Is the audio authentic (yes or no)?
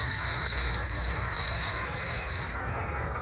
no